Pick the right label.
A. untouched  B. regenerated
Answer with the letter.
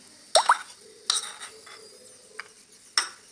A